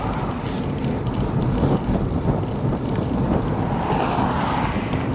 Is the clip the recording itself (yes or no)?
yes